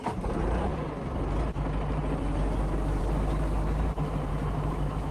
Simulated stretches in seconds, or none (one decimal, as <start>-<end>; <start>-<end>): 4.3-5.1